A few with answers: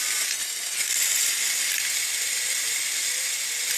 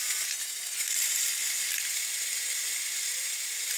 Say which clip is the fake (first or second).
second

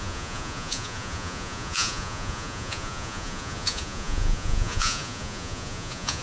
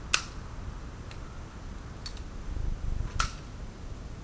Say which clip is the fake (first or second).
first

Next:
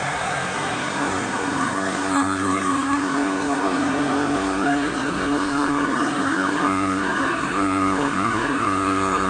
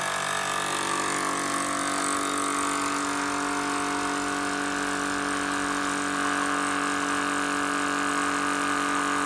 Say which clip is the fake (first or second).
first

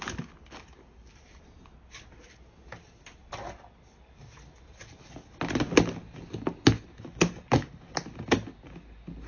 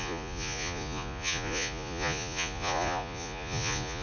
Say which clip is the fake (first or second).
second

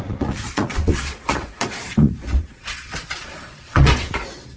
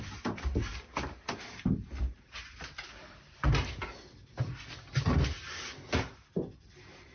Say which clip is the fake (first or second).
first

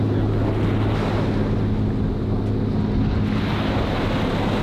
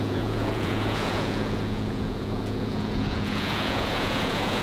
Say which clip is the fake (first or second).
second